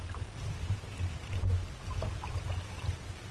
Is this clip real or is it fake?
real